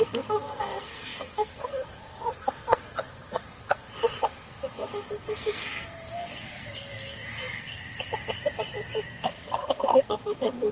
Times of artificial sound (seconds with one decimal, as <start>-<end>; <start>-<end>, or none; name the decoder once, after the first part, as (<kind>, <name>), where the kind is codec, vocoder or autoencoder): 0.0-8.4 (codec, SNAC); 9.0-10.7